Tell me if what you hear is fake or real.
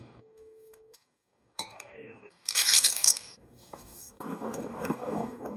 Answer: fake